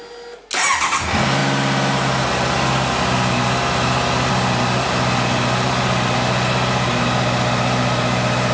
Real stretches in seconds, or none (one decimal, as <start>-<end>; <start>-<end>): 0.0-8.5